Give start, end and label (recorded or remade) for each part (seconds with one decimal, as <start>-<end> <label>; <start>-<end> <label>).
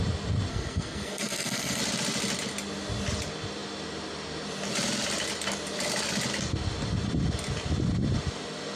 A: 0.0-0.5 recorded; 0.5-1.8 remade; 1.8-8.8 recorded